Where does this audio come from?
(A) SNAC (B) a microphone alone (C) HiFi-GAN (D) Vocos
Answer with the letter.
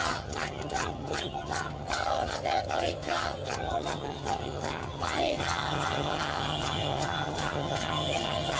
C